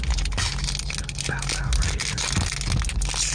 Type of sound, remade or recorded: recorded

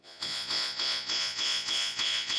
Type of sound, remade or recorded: remade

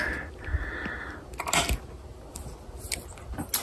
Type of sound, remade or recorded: recorded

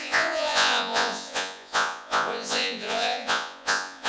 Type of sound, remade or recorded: remade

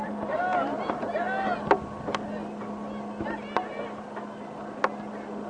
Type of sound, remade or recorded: recorded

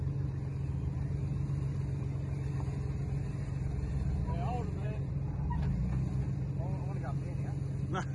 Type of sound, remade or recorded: recorded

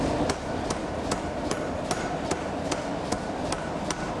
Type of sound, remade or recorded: recorded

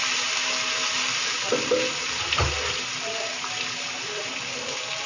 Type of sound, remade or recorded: recorded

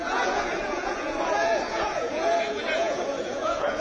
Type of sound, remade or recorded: remade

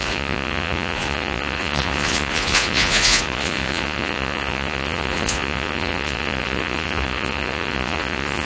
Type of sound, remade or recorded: remade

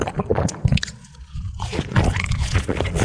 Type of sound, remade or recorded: remade